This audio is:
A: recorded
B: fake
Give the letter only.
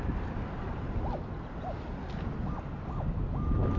A